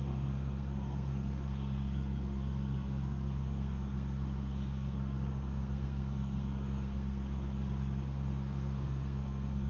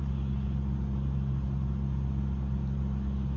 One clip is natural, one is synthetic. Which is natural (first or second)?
second